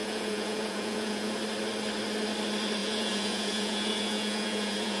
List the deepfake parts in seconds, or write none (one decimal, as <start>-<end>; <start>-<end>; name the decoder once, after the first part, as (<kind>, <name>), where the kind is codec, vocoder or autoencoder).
0.0-1.4 (vocoder, Vocos); 2.8-5.0